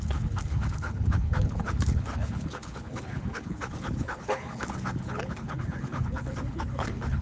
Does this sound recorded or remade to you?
remade